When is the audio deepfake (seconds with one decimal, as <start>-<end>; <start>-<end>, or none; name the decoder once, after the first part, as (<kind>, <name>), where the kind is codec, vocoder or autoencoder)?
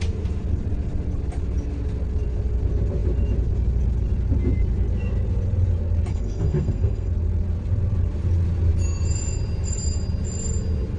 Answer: 6.1-7.1 (codec, SNAC)